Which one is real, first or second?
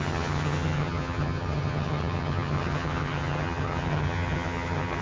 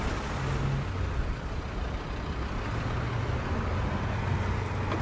second